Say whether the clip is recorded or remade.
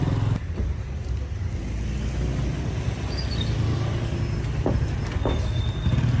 recorded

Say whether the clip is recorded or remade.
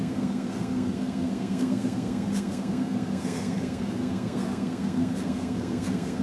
remade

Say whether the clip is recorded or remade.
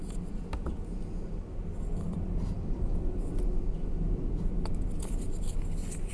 recorded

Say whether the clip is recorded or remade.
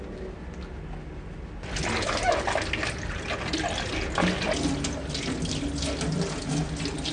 recorded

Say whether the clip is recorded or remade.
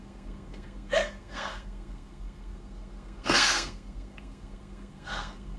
remade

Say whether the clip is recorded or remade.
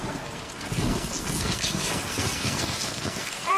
remade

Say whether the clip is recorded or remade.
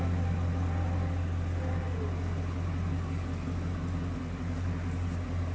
recorded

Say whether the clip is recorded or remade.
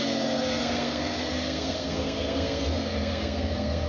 remade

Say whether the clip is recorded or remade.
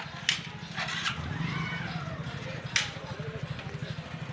recorded